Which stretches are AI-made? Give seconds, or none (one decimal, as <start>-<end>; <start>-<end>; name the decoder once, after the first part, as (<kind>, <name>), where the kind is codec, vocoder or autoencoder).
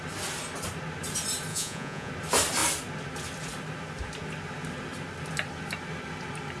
1.5-2.1 (vocoder, Vocos)